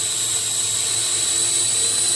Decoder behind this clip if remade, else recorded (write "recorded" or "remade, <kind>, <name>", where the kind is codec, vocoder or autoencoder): recorded